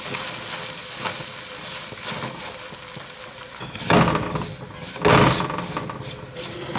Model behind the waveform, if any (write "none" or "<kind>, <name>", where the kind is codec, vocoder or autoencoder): none